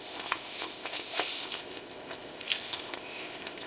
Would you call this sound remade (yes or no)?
yes